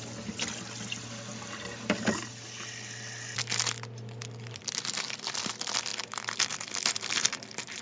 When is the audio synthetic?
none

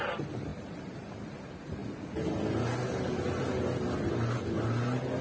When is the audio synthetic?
0.5-1.1 (vocoder, BigVGAN v2)

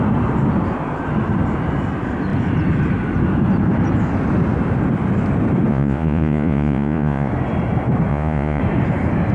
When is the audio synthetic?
5.7-7.3 (vocoder, Vocos); 8.1-8.6

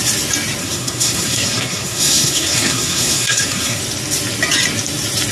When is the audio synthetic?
0.6-3.8 (codec, SNAC)